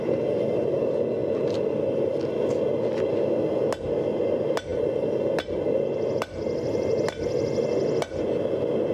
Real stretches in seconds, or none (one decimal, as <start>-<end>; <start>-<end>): 0.0-8.9